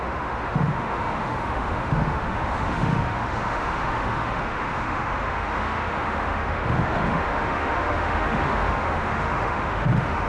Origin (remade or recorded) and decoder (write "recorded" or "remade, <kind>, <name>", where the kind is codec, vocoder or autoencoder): remade, autoencoder, DAC-VAE